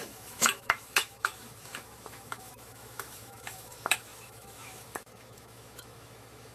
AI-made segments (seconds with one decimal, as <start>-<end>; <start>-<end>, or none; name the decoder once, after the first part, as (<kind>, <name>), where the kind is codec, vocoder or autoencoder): 0.0-6.5 (autoencoder, DAC-VAE)